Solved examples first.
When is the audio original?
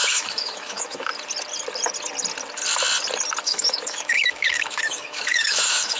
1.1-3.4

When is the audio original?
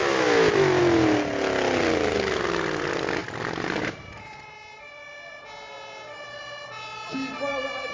0.0-7.9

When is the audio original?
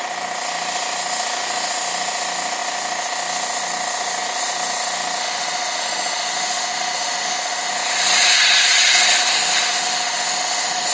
0.0-5.2; 7.7-9.3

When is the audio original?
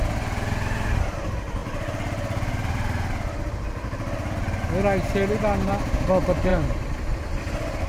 0.0-7.9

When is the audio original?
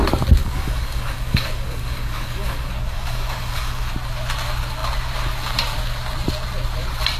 0.0-0.4; 3.9-7.2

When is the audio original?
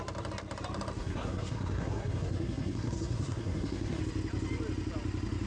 0.0-1.0; 4.0-5.5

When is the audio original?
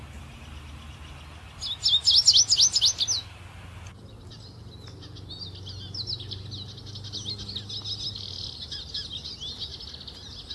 0.0-10.5